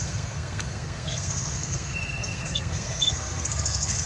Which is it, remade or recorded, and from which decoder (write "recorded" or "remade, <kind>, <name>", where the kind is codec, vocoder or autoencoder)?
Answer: remade, codec, SNAC